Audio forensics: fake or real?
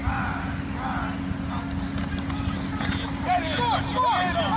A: real